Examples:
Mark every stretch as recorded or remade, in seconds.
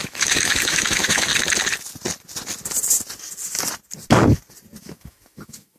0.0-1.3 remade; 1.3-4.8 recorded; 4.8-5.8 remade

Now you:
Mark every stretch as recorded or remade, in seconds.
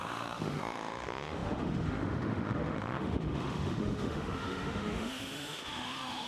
0.0-6.3 remade